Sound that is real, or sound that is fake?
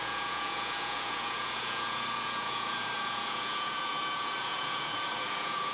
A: fake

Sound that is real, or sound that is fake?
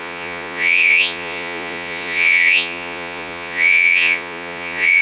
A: fake